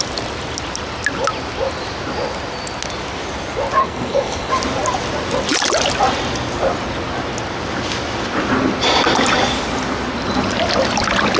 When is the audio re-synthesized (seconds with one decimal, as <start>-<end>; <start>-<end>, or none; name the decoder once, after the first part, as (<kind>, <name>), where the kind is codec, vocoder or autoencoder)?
3.8-4.5 (codec, SNAC)